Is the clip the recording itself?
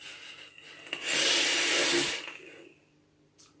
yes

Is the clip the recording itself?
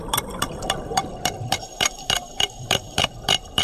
no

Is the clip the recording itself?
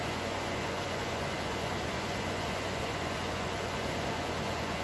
no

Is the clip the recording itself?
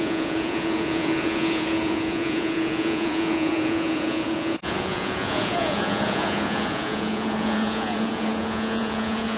no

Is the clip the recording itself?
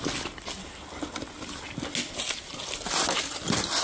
yes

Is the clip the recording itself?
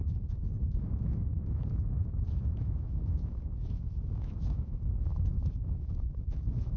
no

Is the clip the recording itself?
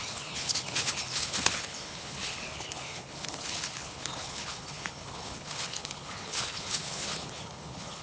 no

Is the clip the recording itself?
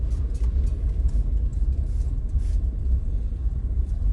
yes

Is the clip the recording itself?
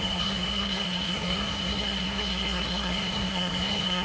no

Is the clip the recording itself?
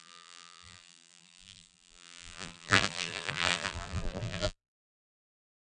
no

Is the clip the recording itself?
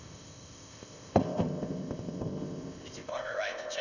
no